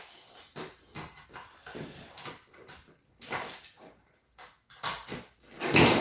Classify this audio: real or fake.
real